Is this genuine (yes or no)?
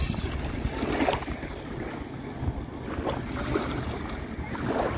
yes